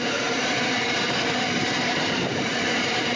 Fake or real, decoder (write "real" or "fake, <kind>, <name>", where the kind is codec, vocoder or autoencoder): fake, vocoder, BigVGAN v2